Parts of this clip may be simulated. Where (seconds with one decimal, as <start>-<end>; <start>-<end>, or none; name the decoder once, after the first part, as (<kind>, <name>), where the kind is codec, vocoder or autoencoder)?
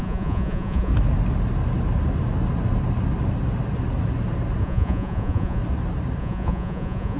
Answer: 0.0-0.9 (vocoder, Vocos); 4.6-5.6; 6.2-7.2